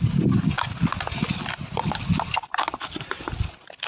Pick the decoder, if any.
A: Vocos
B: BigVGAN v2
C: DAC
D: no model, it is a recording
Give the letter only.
D